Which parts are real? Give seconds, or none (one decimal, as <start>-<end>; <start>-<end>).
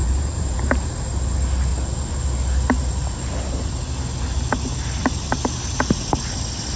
0.9-6.8